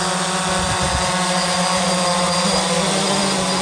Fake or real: real